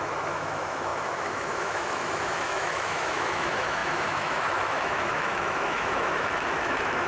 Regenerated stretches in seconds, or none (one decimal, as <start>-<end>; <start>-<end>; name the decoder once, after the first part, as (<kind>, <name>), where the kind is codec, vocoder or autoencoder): 0.0-7.1 (autoencoder, DAC-VAE)